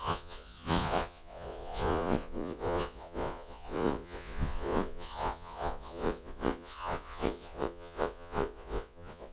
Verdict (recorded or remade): remade